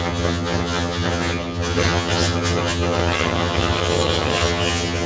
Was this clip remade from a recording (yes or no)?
yes